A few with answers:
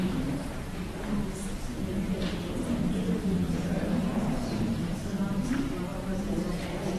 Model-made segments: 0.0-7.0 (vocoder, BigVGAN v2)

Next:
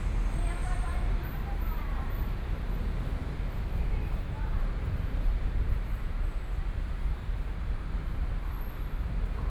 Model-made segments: 0.6-2.7 (vocoder, BigVGAN v2); 3.2-8.3